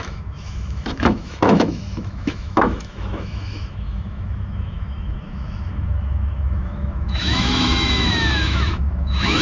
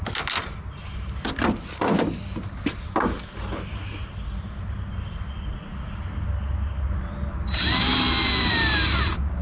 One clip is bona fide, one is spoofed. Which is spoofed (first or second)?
first